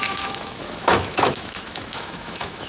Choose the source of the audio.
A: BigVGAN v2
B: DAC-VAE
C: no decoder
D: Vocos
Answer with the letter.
B